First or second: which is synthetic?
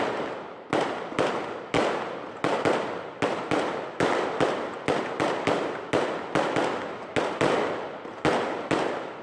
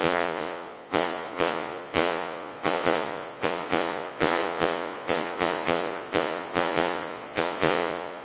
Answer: second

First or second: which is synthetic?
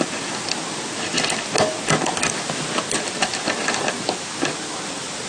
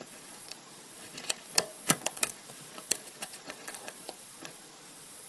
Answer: second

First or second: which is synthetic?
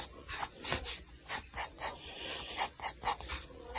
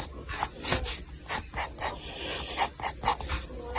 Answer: first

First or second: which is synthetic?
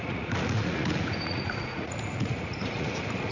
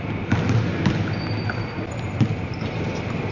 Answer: first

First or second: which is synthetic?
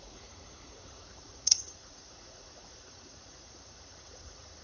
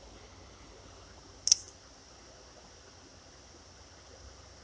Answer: first